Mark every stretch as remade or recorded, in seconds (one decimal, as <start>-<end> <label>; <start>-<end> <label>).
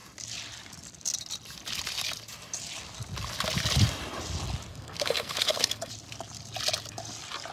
0.0-4.7 recorded; 4.7-5.9 remade; 5.9-7.5 recorded